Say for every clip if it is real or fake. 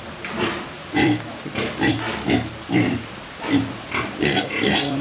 fake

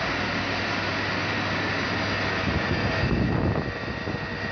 real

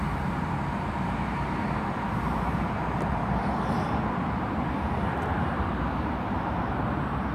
fake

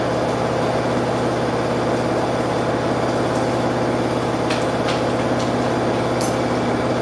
real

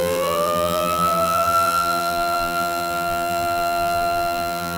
fake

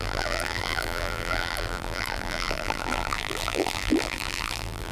fake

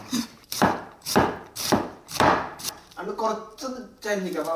fake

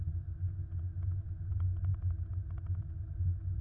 real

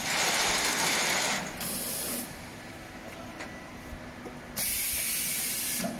fake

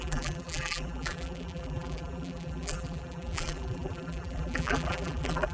fake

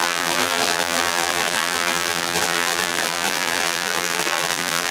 fake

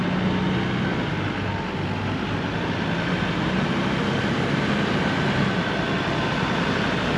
real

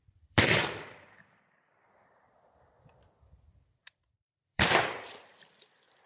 fake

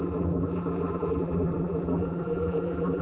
fake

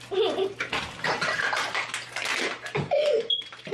fake